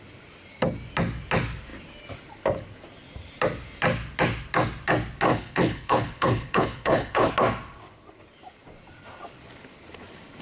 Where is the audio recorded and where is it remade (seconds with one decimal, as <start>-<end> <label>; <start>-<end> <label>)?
0.0-5.3 recorded; 5.3-7.3 remade; 7.3-10.4 recorded